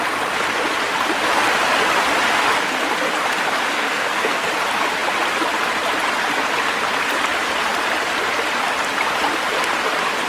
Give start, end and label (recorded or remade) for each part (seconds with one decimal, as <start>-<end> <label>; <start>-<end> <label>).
0.0-3.7 recorded; 3.7-4.5 remade; 4.5-10.3 recorded